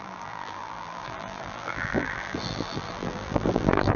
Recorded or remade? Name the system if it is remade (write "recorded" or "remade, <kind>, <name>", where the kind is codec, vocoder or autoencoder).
remade, vocoder, BigVGAN v2